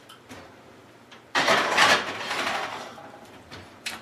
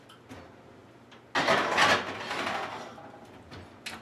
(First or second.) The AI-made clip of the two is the first